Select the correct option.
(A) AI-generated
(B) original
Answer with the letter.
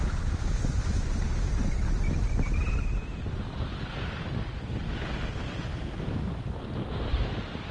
B